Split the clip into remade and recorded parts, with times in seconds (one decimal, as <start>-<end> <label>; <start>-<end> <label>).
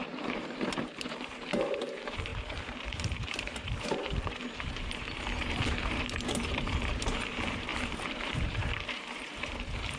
0.0-10.0 remade